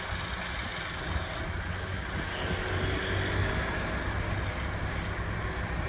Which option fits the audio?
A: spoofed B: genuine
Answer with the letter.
B